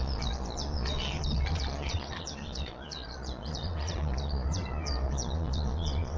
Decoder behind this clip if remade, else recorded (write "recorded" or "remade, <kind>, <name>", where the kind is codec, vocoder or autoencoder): remade, vocoder, Vocos